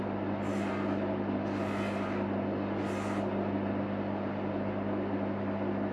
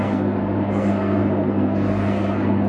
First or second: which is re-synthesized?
second